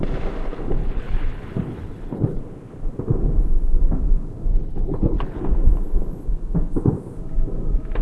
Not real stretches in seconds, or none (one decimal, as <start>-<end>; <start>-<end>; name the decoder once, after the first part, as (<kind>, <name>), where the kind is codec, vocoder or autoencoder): 0.8-2.4 (codec, HILCodec); 4.5-5.4